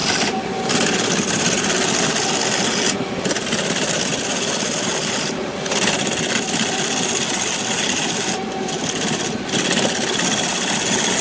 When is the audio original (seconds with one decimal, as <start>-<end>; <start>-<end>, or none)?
0.0-11.2